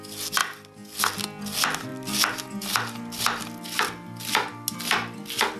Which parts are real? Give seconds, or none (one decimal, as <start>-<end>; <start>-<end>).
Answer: 0.0-5.6